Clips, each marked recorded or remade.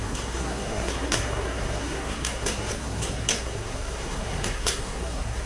remade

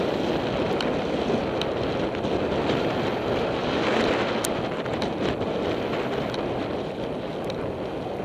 recorded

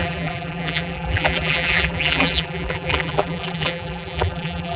remade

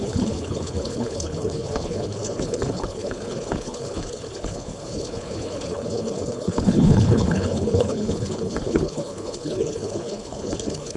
remade